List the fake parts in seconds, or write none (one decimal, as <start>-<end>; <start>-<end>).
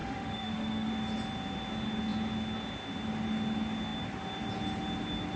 0.0-0.9